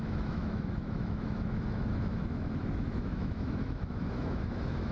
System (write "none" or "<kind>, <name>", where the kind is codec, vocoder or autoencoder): autoencoder, DAC-VAE